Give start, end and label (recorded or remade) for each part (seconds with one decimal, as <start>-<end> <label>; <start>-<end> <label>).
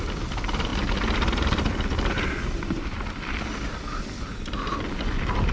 0.0-5.5 recorded